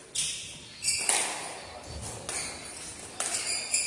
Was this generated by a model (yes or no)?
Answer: no